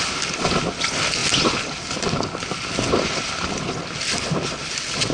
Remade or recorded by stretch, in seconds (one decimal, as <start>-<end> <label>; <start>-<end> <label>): 0.0-5.1 recorded